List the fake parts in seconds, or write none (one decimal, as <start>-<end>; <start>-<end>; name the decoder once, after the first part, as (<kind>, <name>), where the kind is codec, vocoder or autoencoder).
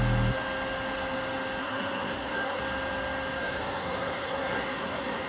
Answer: 1.6-2.6 (codec, SNAC); 3.4-5.3